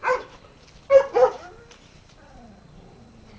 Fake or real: real